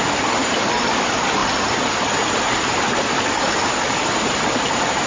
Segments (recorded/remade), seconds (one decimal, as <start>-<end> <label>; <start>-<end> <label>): 0.0-5.1 recorded